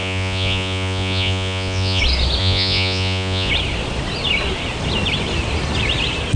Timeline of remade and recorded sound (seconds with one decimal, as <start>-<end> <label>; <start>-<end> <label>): 0.0-2.0 remade; 2.0-2.4 recorded; 2.4-3.5 remade; 3.5-6.4 recorded